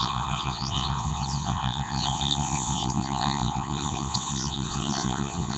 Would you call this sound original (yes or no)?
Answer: no